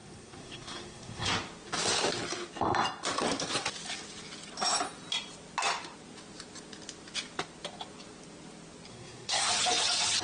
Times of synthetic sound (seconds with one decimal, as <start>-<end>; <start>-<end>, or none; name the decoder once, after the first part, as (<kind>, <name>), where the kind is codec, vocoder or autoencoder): 0.0-1.3 (codec, SNAC); 8.9-9.5